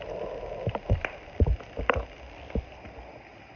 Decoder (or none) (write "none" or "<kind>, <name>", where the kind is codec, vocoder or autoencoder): none